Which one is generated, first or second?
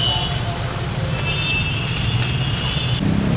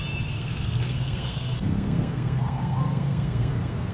second